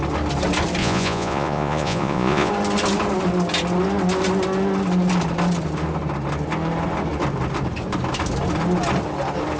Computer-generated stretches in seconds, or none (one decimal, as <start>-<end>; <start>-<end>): 0.8-2.5